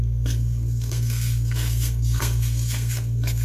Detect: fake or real fake